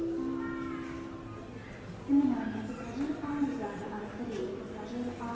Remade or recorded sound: recorded